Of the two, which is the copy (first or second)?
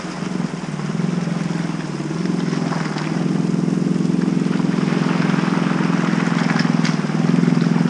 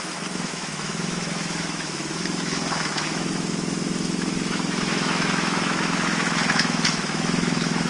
second